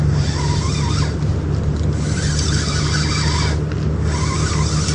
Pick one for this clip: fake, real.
real